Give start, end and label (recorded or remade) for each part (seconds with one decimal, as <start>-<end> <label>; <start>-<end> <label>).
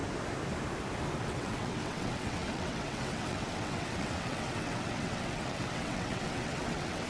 0.0-1.2 recorded; 1.2-7.1 remade